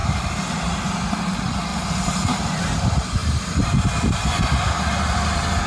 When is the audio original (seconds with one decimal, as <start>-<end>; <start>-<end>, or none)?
0.0-1.7; 2.6-5.7